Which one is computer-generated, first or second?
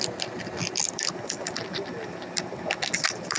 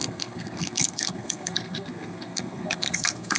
second